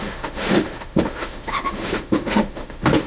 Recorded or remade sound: remade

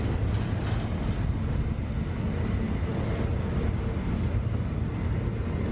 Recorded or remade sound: recorded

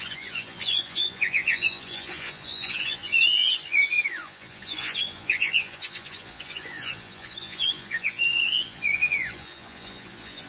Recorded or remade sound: remade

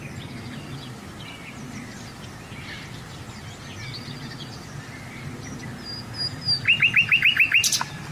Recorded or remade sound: recorded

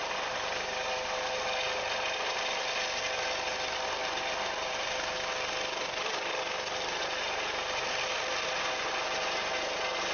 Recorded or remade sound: recorded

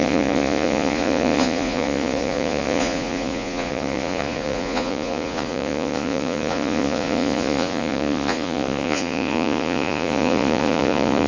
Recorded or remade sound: remade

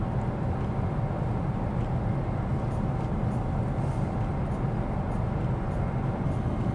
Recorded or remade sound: recorded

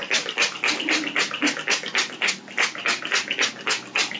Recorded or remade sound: recorded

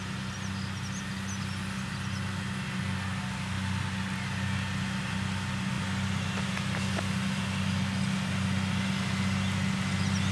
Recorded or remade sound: recorded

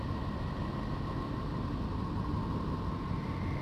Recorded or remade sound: recorded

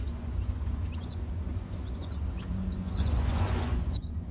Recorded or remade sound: remade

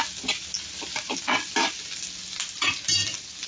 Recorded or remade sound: recorded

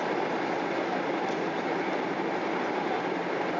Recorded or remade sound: recorded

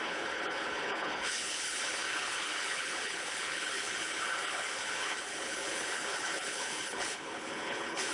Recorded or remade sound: remade